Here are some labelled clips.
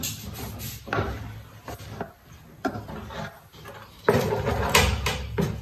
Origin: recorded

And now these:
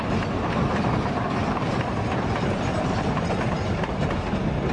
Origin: recorded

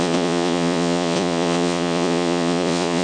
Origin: remade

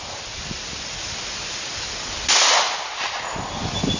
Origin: recorded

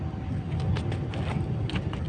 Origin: recorded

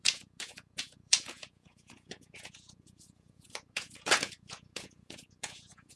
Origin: remade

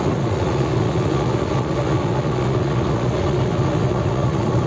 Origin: remade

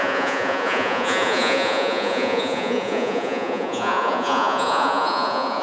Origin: remade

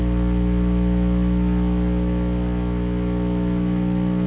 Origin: recorded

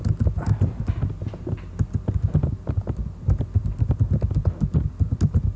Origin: recorded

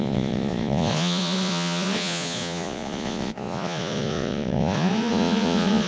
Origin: remade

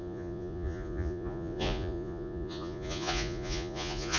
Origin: remade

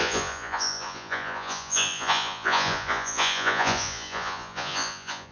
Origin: remade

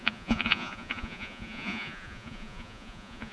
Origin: remade